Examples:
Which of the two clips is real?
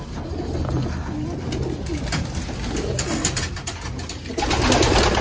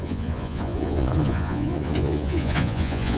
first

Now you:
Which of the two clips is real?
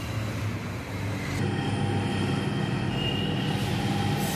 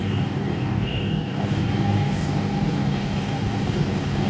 first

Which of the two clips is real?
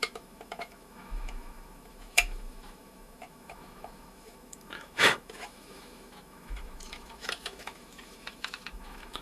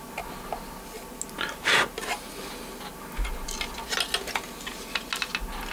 second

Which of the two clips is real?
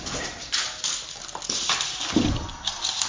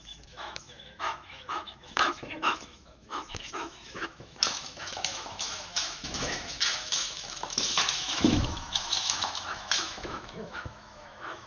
first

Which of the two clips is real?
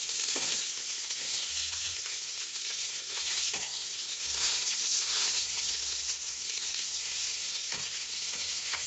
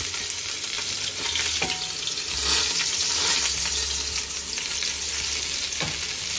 second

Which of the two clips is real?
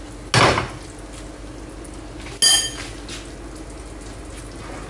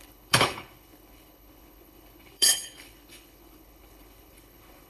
first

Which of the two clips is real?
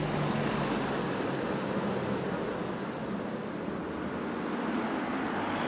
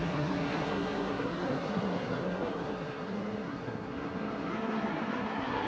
first